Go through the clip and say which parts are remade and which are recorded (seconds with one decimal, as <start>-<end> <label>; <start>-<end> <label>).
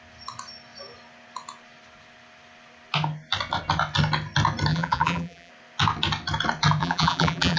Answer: 0.0-4.7 recorded; 4.7-5.5 remade; 5.5-6.8 recorded; 6.8-7.6 remade